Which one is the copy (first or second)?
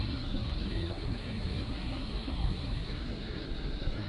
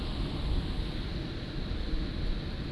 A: first